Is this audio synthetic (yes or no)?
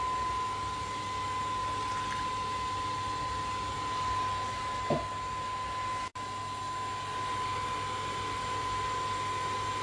no